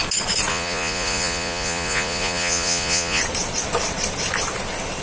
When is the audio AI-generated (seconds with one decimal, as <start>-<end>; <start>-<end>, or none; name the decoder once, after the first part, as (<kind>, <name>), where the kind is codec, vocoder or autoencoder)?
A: 0.5-3.2 (vocoder, Vocos)